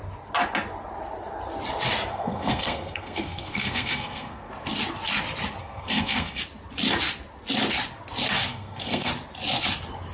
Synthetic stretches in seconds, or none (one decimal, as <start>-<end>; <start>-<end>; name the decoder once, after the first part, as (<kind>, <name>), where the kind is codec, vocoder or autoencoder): 2.1-4.5 (codec, SNAC); 5.6-6.4; 8.5-9.1